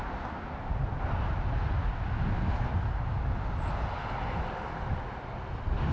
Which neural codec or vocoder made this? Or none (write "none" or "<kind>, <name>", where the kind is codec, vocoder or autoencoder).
none